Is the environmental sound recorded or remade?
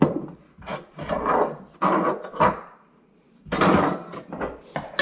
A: recorded